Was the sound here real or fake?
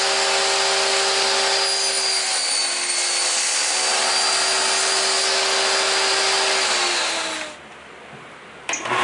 real